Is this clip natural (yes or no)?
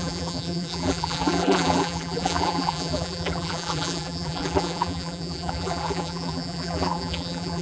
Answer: no